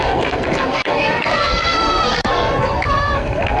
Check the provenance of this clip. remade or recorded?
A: remade